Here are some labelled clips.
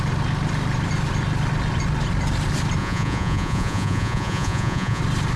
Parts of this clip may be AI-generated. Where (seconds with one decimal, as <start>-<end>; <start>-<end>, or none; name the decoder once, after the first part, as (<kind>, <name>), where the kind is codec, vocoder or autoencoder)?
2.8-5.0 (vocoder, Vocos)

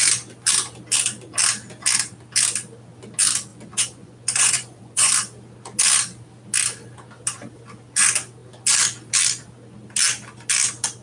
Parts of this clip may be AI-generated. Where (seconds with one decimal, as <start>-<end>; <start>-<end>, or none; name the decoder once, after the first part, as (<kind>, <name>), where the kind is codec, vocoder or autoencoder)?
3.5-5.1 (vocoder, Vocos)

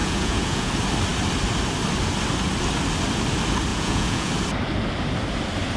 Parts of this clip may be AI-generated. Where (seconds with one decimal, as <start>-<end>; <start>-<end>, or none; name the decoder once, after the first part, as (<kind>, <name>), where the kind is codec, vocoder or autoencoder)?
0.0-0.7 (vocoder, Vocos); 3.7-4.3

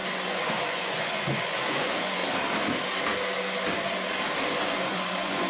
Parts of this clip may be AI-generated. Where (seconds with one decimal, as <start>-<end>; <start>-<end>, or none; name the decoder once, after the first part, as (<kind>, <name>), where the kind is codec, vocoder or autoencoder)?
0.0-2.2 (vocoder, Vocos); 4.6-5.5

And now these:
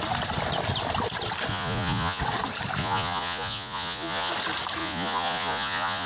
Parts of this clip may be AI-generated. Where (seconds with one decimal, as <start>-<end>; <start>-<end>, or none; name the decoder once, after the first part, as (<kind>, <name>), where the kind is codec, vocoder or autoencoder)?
1.5-2.2 (vocoder, Vocos); 2.8-4.3; 4.8-6.1

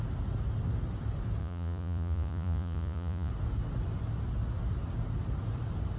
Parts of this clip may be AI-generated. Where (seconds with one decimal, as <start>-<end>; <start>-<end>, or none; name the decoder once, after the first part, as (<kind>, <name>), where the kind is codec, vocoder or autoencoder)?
1.4-3.3 (vocoder, Vocos)